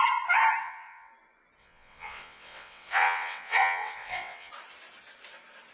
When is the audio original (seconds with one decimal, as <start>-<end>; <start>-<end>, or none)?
0.0-0.6; 1.1-1.6; 4.5-5.7